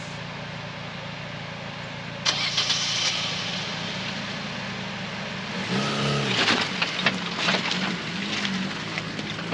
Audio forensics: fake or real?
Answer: real